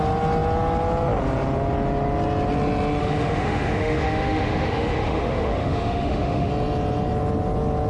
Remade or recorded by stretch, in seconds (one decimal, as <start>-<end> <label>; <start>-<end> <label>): 0.0-3.0 recorded; 3.0-6.5 remade; 6.5-7.9 recorded